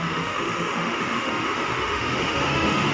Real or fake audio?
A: fake